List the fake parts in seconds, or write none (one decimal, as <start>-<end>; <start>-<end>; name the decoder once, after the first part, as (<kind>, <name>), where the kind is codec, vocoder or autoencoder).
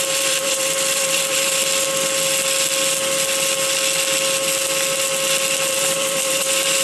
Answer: 0.0-1.6 (vocoder, BigVGAN v2); 5.7-6.8